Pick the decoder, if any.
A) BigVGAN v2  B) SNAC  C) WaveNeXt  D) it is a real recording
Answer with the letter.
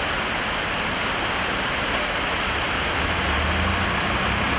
D